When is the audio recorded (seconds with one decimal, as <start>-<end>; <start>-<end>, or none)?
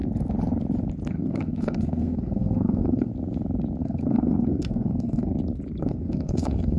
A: 0.0-1.1; 3.1-3.8; 5.3-5.8